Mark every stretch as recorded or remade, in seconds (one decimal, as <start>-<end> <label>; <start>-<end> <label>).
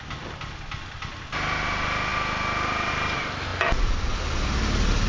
0.0-5.1 recorded